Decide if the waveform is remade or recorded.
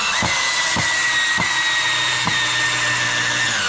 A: recorded